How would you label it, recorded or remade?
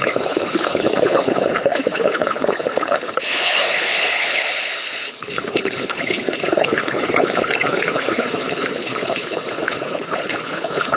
remade